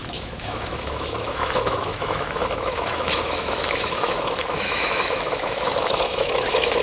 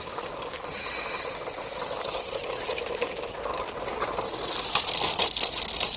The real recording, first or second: second